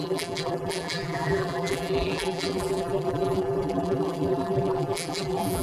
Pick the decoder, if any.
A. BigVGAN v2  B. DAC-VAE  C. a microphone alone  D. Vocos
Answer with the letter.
A